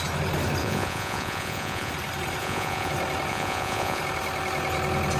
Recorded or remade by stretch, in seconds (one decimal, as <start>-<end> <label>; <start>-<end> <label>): 0.0-0.6 recorded; 0.6-1.9 remade; 1.9-2.4 recorded; 2.4-2.9 remade; 2.9-3.3 recorded; 3.3-4.0 remade; 4.0-5.2 recorded